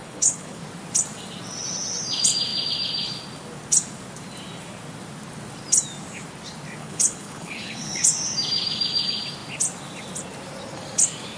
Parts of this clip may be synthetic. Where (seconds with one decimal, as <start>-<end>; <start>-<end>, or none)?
0.0-0.6; 6.8-8.0